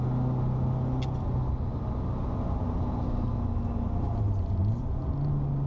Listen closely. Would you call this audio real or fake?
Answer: real